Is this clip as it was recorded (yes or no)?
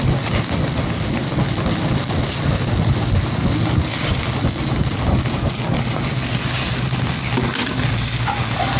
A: yes